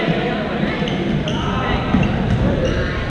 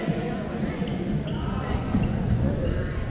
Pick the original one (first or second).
first